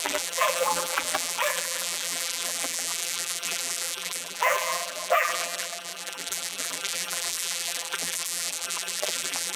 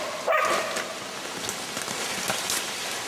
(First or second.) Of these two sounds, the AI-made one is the first